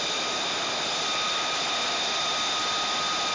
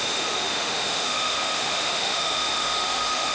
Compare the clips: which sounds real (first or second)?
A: first